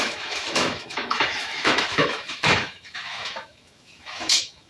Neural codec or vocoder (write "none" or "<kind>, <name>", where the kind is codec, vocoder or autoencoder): autoencoder, DAC-VAE